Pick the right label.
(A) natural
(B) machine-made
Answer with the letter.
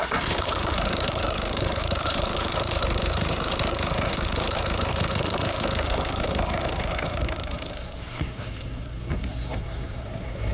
B